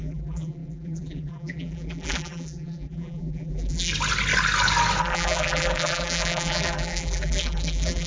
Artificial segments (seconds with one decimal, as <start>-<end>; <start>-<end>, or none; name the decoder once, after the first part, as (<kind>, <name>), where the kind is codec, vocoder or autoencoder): 0.0-3.9 (vocoder, BigVGAN v2); 5.0-8.1